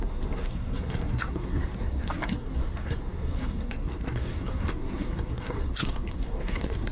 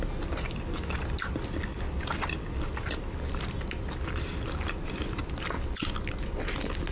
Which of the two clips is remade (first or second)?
first